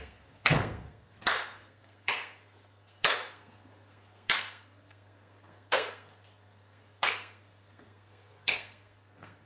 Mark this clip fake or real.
fake